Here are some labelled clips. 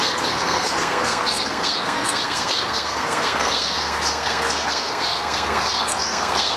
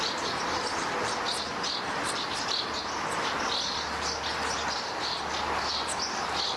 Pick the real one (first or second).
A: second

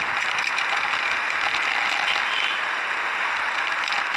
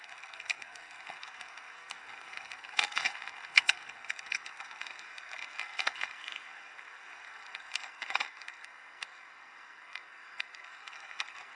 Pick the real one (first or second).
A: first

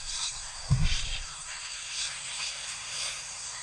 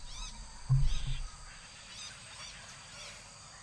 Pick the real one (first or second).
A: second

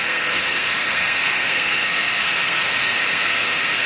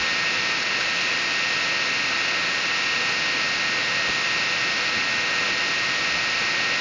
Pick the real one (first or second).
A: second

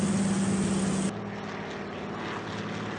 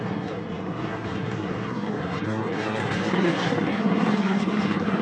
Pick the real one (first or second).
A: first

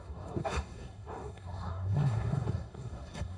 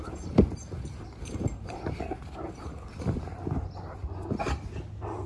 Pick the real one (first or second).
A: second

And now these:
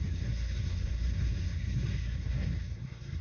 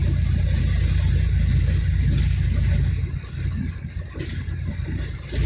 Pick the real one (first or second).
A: second